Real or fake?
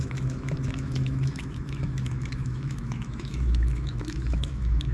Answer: fake